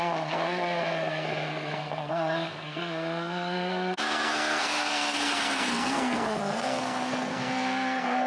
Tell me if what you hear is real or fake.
fake